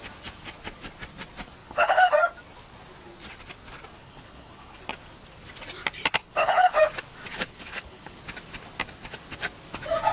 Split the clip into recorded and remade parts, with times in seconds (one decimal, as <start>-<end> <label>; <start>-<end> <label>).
0.0-1.6 recorded; 1.6-2.1 remade; 2.1-4.0 recorded; 4.0-4.8 remade; 4.8-6.2 recorded; 6.2-6.8 remade; 6.8-7.3 recorded; 7.3-8.2 remade; 8.2-10.1 recorded